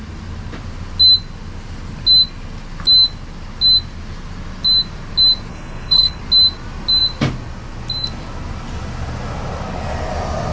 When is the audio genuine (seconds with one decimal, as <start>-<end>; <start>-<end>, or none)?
0.0-5.5; 6.2-10.5